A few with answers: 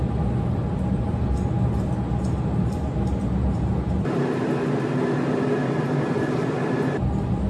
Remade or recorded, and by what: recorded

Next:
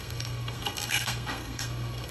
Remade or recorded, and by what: remade, codec, SNAC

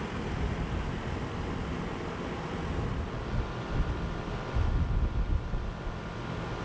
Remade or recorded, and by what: recorded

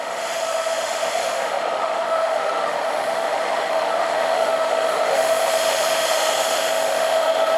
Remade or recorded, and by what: remade, autoencoder, DAC-VAE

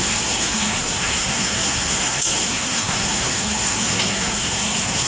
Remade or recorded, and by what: remade, codec, SNAC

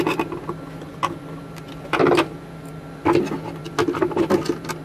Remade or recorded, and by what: recorded